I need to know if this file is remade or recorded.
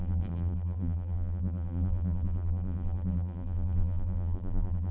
remade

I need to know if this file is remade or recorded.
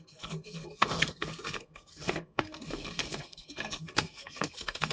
remade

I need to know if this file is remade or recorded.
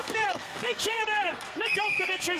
remade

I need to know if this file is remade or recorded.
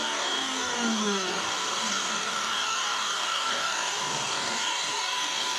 remade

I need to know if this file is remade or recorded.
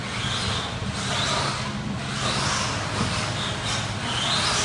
recorded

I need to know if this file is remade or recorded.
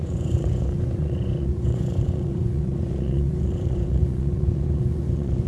remade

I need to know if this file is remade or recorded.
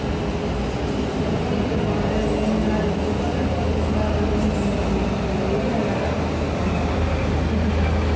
recorded